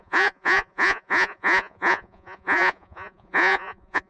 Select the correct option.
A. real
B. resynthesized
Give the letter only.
B